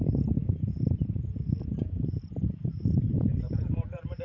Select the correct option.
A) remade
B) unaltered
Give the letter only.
A